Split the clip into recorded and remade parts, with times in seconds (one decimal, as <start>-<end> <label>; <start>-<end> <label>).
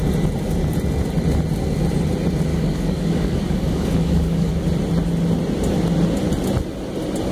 0.0-2.5 recorded; 2.5-4.5 remade; 4.5-7.3 recorded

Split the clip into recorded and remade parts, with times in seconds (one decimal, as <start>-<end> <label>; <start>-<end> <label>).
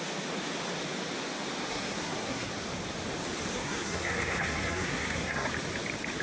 0.0-1.7 recorded; 1.7-2.5 remade; 2.5-3.5 recorded; 3.5-5.5 remade; 5.5-6.2 recorded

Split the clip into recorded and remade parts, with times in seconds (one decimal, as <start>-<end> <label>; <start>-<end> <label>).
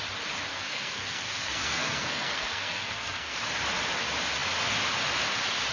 0.0-0.5 recorded; 0.5-3.4 remade; 3.4-5.7 recorded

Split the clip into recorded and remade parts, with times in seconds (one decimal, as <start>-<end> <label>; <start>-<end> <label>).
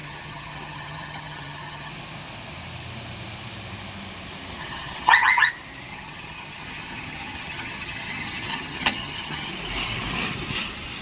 0.0-1.9 remade; 1.9-4.6 recorded; 4.6-5.5 remade; 5.5-5.9 recorded; 5.9-9.5 remade; 9.5-11.0 recorded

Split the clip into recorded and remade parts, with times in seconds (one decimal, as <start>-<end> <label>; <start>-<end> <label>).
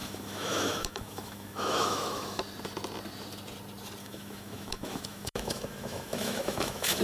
0.0-2.4 remade; 2.4-4.0 recorded; 4.0-7.0 remade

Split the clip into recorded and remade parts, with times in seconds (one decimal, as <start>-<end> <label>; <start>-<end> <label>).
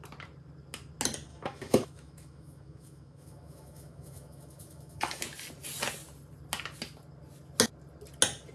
0.0-1.3 recorded; 1.3-5.2 remade; 5.2-8.5 recorded